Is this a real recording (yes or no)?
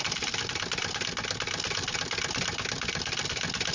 yes